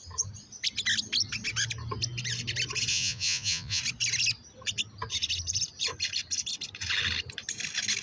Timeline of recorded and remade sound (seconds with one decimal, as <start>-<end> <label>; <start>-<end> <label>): 0.0-2.9 recorded; 2.9-3.8 remade; 3.8-8.0 recorded